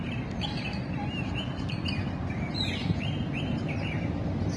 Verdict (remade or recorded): remade